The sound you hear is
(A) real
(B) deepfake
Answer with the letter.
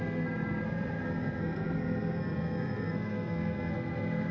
B